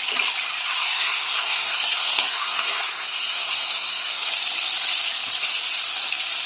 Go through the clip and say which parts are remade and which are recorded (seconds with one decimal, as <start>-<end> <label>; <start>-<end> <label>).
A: 0.0-0.8 recorded; 0.8-4.3 remade; 4.3-6.5 recorded